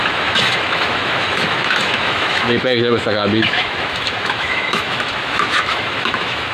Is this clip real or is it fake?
fake